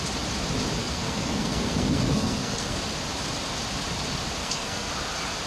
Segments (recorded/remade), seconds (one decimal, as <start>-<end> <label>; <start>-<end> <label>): 0.0-0.8 recorded; 0.8-2.8 remade; 2.8-4.4 recorded; 4.4-4.9 remade; 4.9-5.5 recorded